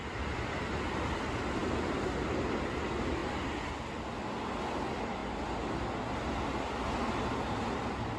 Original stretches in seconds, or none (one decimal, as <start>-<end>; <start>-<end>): 0.0-8.2